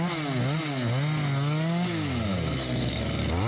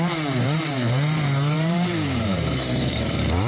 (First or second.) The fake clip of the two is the second